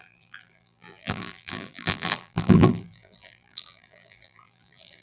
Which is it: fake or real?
fake